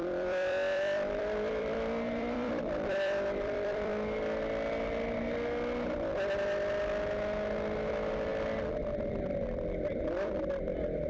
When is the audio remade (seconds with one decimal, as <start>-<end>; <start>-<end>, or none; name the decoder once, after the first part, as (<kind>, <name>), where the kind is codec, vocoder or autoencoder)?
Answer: 0.0-3.9 (vocoder, BigVGAN v2); 7.9-8.3; 9.1-11.1